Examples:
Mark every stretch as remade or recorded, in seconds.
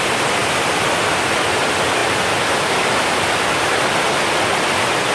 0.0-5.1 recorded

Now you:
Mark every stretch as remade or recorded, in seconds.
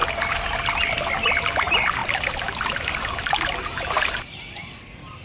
0.0-5.2 recorded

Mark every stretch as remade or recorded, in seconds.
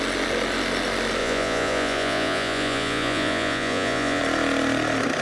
0.0-1.2 recorded; 1.2-4.2 remade; 4.2-5.2 recorded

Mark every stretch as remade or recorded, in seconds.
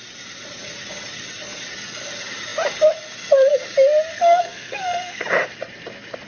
0.0-4.1 recorded; 4.1-5.2 remade; 5.2-6.3 recorded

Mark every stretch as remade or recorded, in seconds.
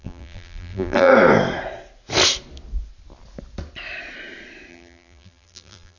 0.0-1.1 remade; 1.1-4.7 recorded; 4.7-6.0 remade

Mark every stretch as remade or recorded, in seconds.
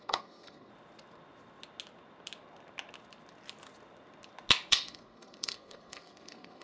0.0-0.7 remade; 0.7-4.7 recorded; 4.7-6.6 remade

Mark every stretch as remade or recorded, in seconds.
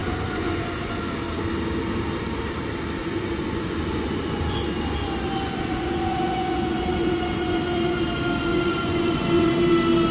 0.0-1.0 remade; 1.0-3.0 recorded; 3.0-8.0 remade; 8.0-8.5 recorded; 8.5-9.7 remade; 9.7-10.1 recorded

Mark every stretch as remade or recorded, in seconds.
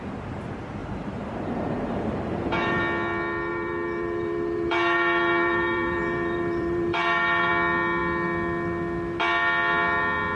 0.0-0.8 recorded; 0.8-2.8 remade; 2.8-3.5 recorded; 3.5-7.5 remade; 7.5-10.4 recorded